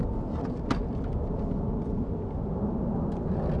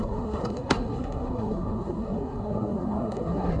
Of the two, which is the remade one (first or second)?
second